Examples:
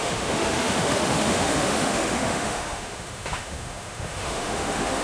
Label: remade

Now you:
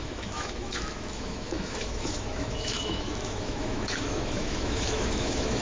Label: remade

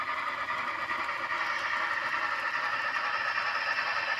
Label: recorded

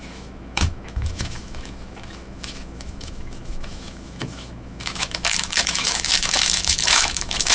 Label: remade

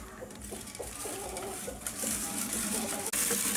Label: recorded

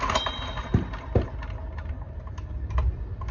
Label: recorded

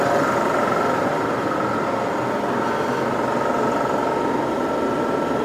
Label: recorded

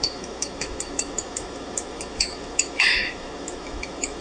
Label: remade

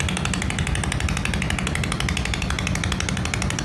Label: recorded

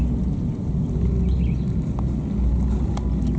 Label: recorded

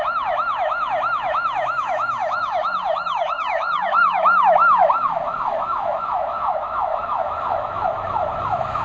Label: remade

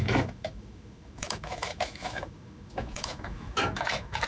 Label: remade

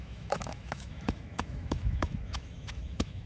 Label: remade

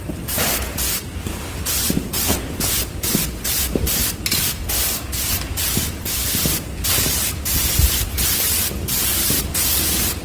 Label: recorded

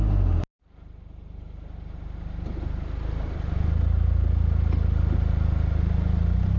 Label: recorded